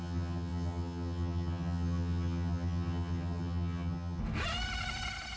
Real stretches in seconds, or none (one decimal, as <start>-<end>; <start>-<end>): 4.2-5.4